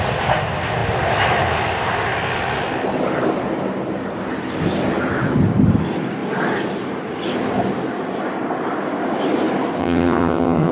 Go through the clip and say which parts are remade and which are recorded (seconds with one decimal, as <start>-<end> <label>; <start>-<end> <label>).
0.0-9.8 recorded; 9.8-10.7 remade